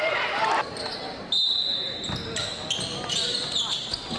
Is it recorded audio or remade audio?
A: recorded